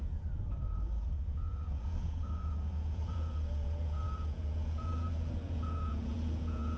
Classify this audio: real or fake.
fake